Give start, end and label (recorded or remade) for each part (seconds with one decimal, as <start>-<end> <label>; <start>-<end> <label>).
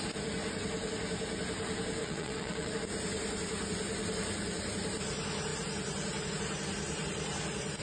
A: 0.0-2.0 recorded; 2.0-2.7 remade; 2.7-7.8 recorded